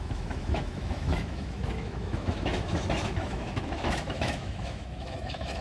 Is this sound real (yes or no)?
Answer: no